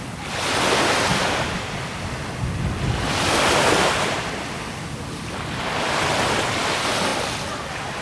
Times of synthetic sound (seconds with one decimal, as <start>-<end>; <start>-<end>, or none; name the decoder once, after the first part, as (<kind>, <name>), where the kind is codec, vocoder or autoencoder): none